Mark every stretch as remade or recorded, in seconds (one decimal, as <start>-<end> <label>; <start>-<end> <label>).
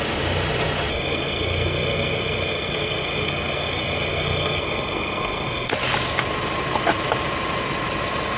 0.0-0.9 recorded; 0.9-5.7 remade; 5.7-8.4 recorded